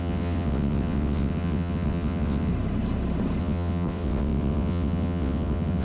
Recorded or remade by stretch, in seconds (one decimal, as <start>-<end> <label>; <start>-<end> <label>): 0.0-2.5 remade; 2.5-3.4 recorded; 3.4-5.8 remade